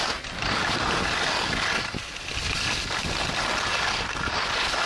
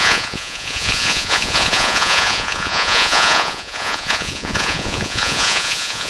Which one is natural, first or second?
first